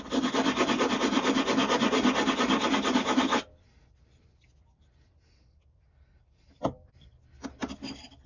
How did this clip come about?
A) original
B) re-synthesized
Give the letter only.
A